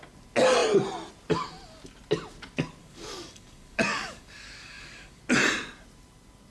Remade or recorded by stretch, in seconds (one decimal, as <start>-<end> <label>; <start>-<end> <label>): 0.0-2.8 recorded; 2.8-5.2 remade; 5.2-6.5 recorded